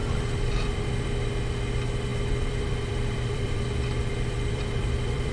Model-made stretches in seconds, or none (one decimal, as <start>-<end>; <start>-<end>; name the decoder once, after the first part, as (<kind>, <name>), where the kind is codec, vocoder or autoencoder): 0.0-0.9 (vocoder, BigVGAN v2); 2.1-5.3